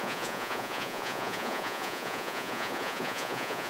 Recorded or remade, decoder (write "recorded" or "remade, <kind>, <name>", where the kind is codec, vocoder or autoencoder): remade, vocoder, Vocos